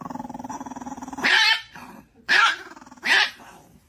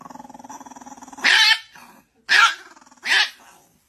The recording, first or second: second